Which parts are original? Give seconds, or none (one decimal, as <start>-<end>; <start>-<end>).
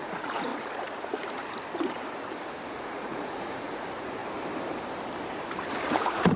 0.5-2.7; 4.2-6.0